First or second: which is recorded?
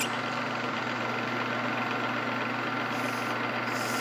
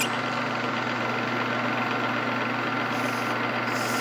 second